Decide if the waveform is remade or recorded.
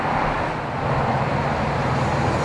recorded